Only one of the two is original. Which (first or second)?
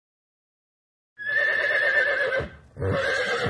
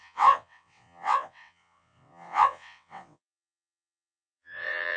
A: first